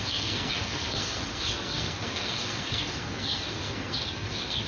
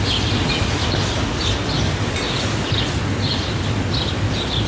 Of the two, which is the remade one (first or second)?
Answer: first